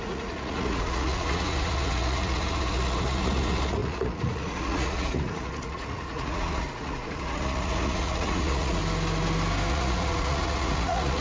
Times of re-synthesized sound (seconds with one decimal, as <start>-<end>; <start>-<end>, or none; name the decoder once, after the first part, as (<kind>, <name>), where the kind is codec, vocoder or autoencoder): 0.0-8.8 (vocoder, Vocos); 9.7-11.2